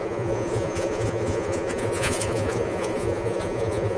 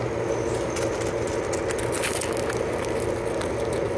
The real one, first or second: second